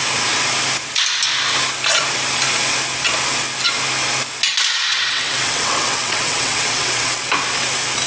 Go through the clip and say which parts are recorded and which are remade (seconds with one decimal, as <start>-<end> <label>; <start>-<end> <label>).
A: 0.0-4.9 recorded; 4.9-7.3 remade; 7.3-8.1 recorded